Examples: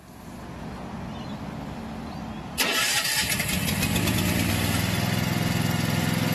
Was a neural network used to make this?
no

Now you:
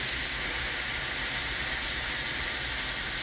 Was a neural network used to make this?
no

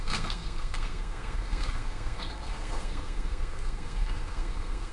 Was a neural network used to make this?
yes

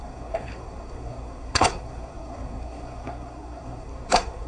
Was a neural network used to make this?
yes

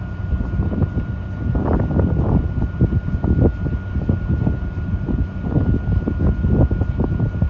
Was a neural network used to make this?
no